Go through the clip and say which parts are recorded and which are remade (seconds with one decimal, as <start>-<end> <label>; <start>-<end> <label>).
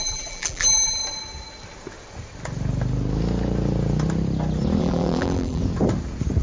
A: 0.0-1.0 remade; 1.0-4.8 recorded; 4.8-5.6 remade; 5.6-6.4 recorded